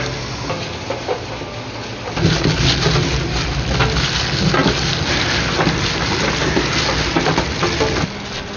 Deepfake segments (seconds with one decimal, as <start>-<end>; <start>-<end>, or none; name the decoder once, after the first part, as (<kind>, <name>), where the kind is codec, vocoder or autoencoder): none